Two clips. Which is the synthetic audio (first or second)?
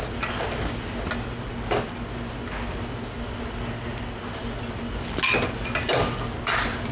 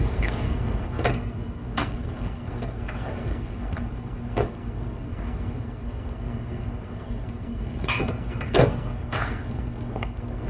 second